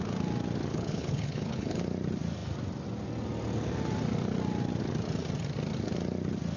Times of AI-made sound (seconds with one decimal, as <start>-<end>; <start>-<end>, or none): 0.7-1.8